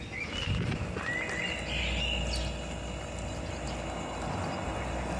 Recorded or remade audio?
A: recorded